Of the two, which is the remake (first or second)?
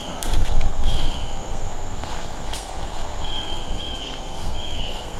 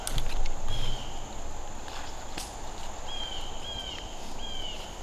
first